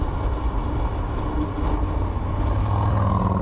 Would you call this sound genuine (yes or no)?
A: yes